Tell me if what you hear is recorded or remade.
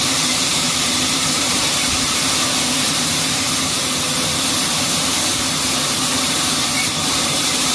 remade